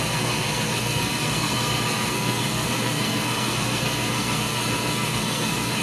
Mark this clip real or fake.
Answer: fake